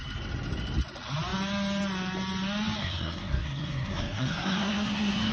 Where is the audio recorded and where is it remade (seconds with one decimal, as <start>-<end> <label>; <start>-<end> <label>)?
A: 0.0-2.8 recorded; 2.8-5.3 remade